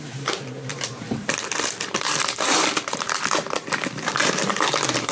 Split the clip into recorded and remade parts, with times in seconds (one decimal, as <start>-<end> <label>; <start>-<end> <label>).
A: 0.0-0.7 recorded; 0.7-3.1 remade; 3.1-5.1 recorded